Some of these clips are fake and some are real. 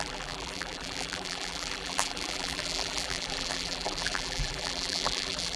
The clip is fake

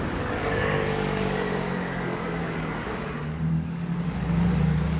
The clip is fake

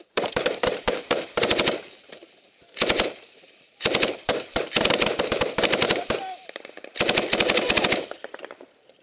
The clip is fake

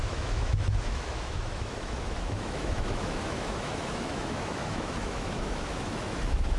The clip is fake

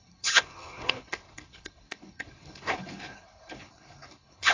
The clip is fake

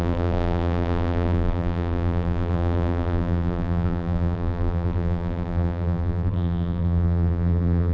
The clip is fake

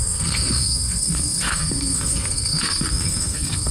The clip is fake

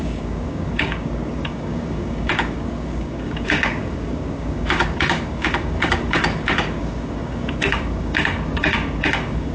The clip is fake